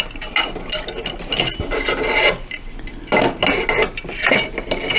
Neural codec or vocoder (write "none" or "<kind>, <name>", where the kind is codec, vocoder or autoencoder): none